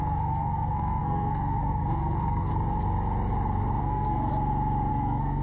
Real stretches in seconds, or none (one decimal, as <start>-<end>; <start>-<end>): 2.5-3.8; 4.3-4.9